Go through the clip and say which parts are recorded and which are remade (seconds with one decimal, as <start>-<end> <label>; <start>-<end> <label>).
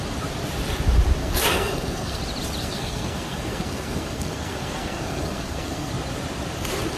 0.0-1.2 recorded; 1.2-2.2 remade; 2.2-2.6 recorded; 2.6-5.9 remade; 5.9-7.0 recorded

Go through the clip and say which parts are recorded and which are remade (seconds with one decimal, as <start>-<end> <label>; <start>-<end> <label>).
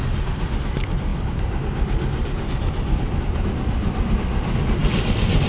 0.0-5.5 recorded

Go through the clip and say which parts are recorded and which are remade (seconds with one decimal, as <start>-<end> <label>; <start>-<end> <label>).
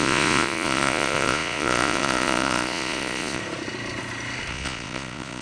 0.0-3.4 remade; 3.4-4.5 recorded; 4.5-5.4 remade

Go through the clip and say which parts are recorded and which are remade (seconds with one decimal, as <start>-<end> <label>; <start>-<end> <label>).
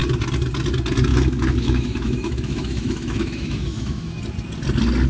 0.0-1.1 recorded; 1.1-4.2 remade; 4.2-5.1 recorded